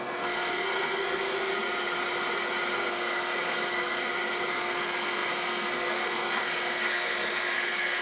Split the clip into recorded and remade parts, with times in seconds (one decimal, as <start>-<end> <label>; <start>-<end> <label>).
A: 0.0-1.5 remade; 1.5-2.7 recorded; 2.7-4.0 remade; 4.0-4.5 recorded; 4.5-8.0 remade